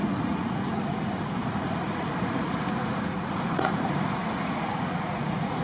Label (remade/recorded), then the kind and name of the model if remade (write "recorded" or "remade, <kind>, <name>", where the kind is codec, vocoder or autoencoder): remade, vocoder, Vocos